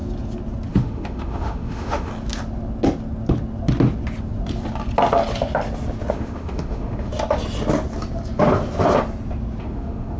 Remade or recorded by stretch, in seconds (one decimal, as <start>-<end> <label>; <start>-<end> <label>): 0.0-0.7 recorded; 0.7-2.1 remade; 2.1-6.1 recorded; 6.1-7.1 remade; 7.1-9.6 recorded; 9.6-10.2 remade